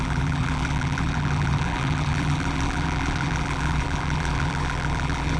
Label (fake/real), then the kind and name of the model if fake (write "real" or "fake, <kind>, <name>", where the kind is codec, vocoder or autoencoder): fake, vocoder, BigVGAN v2